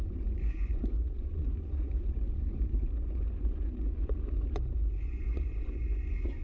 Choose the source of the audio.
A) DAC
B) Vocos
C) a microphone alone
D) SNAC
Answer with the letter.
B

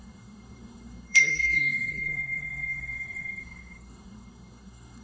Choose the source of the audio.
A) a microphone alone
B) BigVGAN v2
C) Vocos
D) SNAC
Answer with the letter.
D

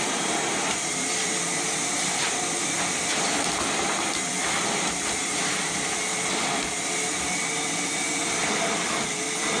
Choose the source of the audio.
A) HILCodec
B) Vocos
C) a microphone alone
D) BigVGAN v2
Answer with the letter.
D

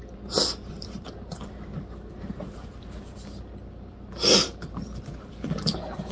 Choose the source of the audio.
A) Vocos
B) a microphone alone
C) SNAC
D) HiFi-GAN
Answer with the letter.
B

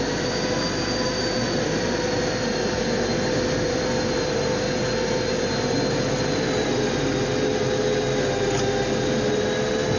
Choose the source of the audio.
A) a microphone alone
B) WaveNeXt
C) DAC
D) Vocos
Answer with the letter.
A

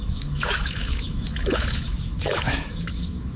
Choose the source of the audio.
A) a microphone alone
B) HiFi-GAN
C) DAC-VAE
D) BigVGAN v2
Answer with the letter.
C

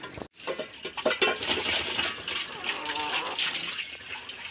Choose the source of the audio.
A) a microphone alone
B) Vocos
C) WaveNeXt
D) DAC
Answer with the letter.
A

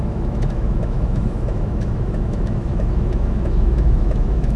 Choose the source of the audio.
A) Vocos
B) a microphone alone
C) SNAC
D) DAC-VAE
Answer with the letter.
D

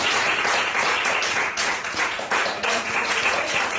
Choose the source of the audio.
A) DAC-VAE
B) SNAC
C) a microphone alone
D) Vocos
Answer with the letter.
D